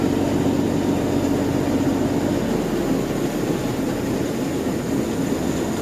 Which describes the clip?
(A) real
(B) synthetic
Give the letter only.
A